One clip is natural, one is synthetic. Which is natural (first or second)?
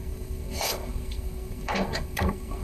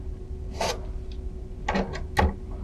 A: second